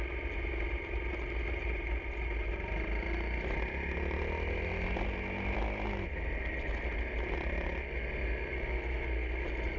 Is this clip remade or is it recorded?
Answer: recorded